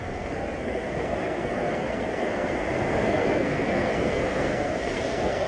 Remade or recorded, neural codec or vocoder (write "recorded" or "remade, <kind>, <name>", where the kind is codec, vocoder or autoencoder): remade, codec, SNAC